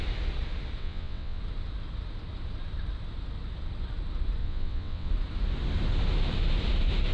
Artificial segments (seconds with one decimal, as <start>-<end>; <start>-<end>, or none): 0.8-1.4; 4.4-5.1